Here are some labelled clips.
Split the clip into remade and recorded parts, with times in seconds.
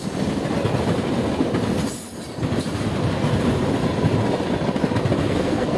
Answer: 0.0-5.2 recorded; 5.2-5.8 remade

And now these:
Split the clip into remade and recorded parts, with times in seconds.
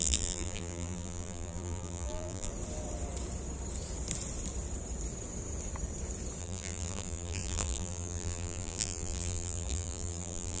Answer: 0.0-2.5 remade; 2.5-6.4 recorded; 6.4-10.6 remade